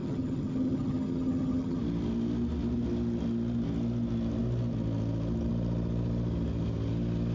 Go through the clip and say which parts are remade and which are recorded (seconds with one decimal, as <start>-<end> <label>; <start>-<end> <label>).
0.0-1.8 remade; 1.8-7.3 recorded